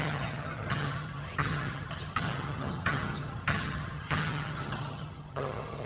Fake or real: fake